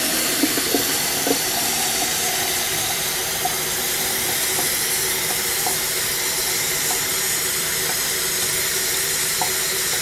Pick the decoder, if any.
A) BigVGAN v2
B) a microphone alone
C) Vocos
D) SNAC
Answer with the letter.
B